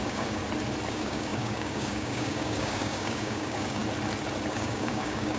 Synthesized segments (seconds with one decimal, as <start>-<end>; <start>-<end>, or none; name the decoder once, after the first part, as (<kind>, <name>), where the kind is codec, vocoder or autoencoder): 0.0-0.4 (codec, DAC); 0.9-3.8; 4.5-5.4